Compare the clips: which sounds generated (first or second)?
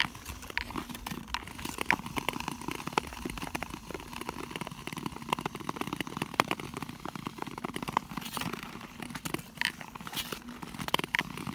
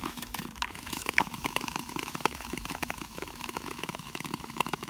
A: second